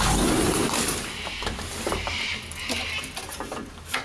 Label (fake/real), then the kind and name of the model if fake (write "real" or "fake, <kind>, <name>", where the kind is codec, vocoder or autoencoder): real